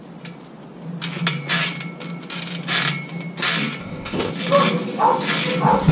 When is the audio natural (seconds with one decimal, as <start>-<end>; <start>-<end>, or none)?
0.0-3.8; 4.3-5.9